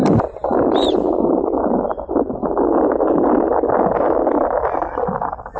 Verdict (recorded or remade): recorded